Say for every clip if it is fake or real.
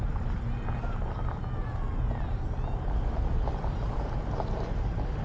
real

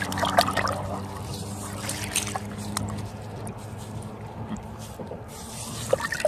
fake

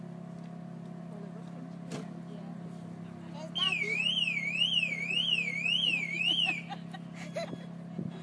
real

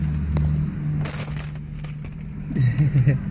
real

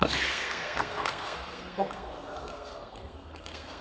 fake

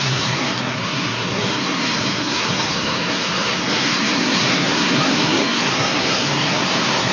fake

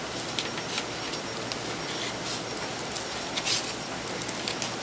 real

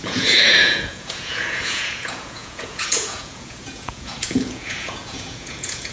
fake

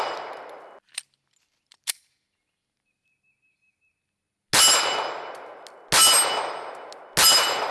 real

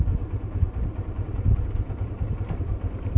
real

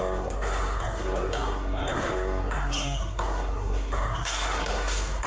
fake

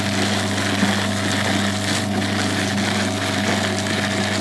fake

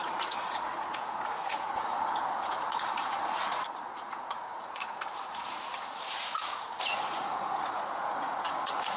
fake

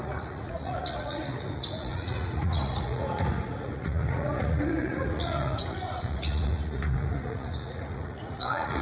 fake